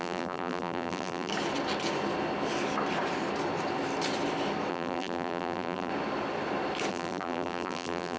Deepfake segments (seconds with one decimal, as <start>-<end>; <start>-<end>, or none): 0.0-1.3; 4.7-5.9; 6.9-8.2